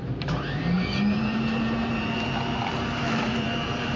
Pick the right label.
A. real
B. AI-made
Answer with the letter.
B